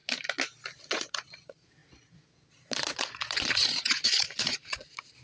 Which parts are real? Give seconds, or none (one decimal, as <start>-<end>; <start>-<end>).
0.0-0.9